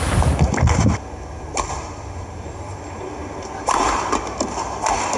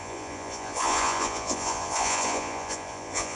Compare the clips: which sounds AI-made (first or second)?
second